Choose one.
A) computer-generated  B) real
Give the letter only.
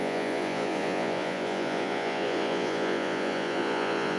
A